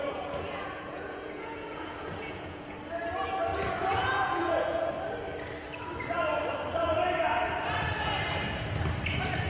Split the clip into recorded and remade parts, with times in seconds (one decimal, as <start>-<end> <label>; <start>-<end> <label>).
0.0-2.7 remade; 2.7-3.5 recorded; 3.5-4.9 remade; 4.9-9.5 recorded